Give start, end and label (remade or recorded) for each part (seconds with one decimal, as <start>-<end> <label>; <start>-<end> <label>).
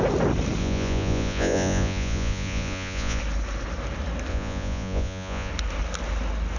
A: 0.0-0.6 recorded; 0.6-3.2 remade; 3.2-4.3 recorded; 4.3-5.5 remade; 5.5-6.6 recorded